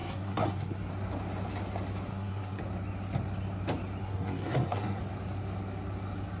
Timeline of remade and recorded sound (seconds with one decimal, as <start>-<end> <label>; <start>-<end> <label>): 0.0-0.9 remade; 0.9-2.1 recorded; 2.1-2.6 remade; 2.6-4.0 recorded; 4.0-5.0 remade; 5.0-6.4 recorded